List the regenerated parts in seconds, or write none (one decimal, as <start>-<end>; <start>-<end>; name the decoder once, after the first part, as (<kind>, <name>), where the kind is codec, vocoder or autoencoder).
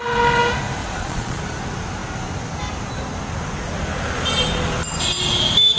0.8-1.4 (vocoder, Vocos)